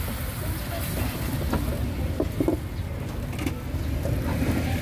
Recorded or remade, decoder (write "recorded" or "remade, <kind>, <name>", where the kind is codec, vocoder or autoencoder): recorded